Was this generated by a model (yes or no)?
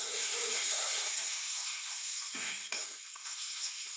yes